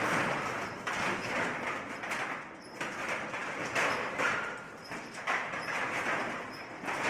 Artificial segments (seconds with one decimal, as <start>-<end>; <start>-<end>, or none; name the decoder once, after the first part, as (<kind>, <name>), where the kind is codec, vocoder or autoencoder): 3.4-6.2 (vocoder, BigVGAN v2)